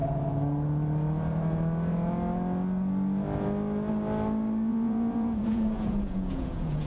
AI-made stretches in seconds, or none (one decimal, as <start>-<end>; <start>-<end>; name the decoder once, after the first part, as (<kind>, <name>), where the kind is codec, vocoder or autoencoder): 4.7-6.9 (vocoder, Vocos)